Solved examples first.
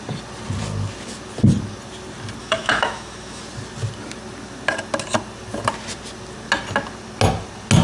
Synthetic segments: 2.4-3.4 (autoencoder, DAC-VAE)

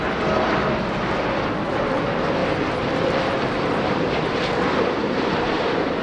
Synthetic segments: 2.4-4.2 (vocoder, BigVGAN v2); 5.0-6.0

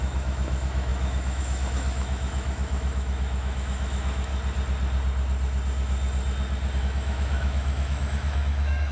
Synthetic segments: 0.0-4.3 (autoencoder, DAC-VAE); 6.8-8.9